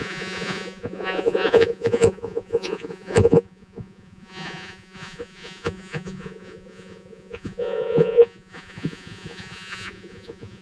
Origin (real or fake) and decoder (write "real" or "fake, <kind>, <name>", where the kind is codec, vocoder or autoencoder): fake, vocoder, Vocos